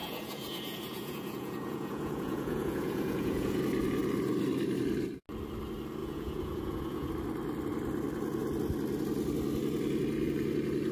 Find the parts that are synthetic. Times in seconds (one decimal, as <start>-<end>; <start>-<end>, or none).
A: 0.0-3.6; 6.0-7.1